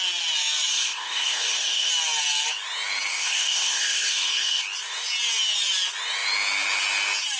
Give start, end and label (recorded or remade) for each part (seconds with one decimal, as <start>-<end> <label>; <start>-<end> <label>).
0.0-0.7 recorded; 0.7-1.9 remade; 1.9-3.1 recorded; 3.1-4.6 remade; 4.6-7.4 recorded